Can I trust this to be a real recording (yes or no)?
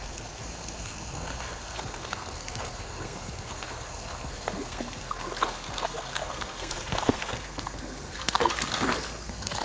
no